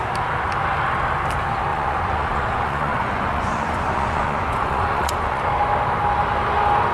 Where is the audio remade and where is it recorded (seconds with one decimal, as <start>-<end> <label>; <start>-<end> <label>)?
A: 0.0-1.7 recorded; 1.7-5.4 remade; 5.4-6.9 recorded